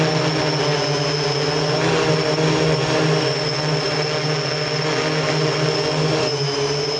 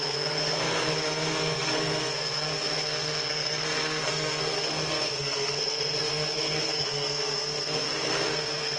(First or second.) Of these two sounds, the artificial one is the second